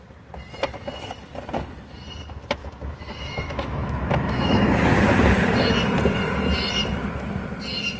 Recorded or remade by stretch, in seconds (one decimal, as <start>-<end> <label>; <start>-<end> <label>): 0.0-2.6 recorded; 2.6-4.7 remade; 4.7-8.0 recorded